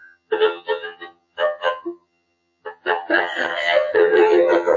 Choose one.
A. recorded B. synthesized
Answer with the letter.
B